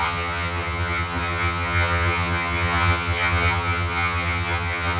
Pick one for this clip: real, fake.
fake